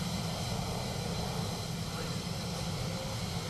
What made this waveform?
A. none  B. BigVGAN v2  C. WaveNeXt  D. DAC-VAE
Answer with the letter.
A